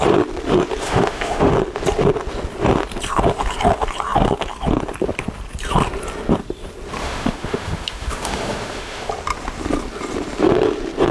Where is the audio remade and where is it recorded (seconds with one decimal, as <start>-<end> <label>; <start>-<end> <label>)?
0.0-0.8 recorded; 0.8-1.5 remade; 1.5-7.0 recorded; 7.0-9.1 remade; 9.1-11.1 recorded